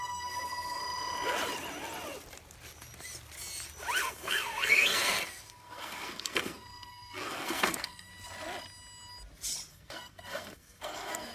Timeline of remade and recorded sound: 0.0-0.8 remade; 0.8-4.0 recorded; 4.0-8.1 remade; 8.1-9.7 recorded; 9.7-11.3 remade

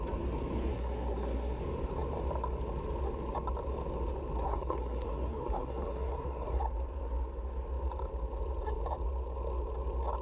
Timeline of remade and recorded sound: 0.0-0.7 recorded; 0.7-1.6 remade; 1.6-4.4 recorded; 4.4-6.6 remade; 6.6-10.2 recorded

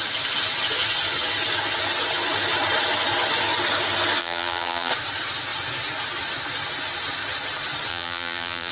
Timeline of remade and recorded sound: 0.0-4.2 recorded; 4.2-4.9 remade; 4.9-7.9 recorded; 7.9-8.7 remade

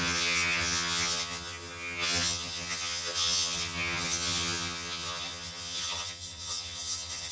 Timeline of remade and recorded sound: 0.0-7.3 remade

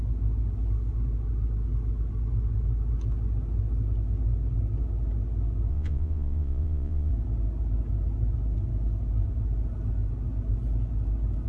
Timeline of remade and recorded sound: 0.0-5.7 recorded; 5.7-7.1 remade; 7.1-11.5 recorded

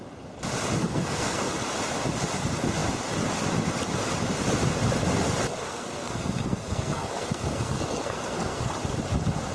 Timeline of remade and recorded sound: 0.0-0.8 recorded; 0.8-1.4 remade; 1.4-5.6 recorded; 5.6-8.7 remade; 8.7-9.5 recorded

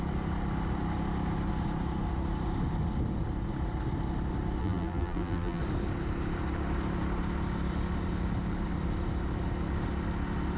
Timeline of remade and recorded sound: 0.0-4.6 recorded; 4.6-5.6 remade; 5.6-10.6 recorded